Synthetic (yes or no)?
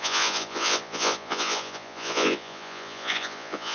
yes